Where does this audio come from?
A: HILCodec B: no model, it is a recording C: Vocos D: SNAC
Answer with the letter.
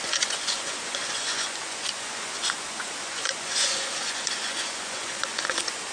C